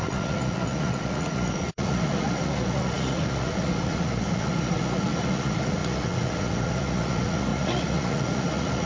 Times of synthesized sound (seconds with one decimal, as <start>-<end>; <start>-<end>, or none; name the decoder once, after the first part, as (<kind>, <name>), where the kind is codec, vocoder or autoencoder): 0.0-8.9 (vocoder, Vocos)